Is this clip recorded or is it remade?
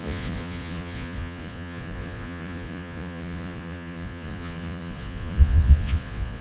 remade